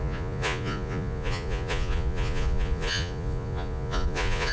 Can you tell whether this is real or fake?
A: fake